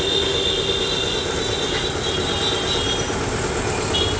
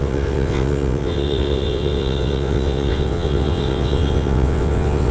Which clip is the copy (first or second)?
second